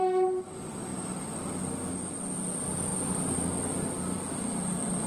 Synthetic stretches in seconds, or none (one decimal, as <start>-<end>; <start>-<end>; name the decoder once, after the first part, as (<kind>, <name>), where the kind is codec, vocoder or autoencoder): none